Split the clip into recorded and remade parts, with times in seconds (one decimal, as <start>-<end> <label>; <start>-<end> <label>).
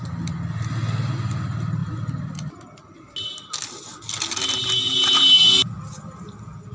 0.0-6.7 recorded